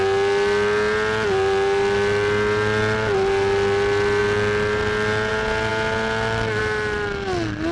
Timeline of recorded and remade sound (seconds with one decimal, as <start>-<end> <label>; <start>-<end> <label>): 0.0-7.7 recorded